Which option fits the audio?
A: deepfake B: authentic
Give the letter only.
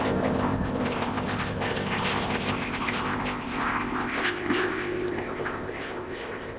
A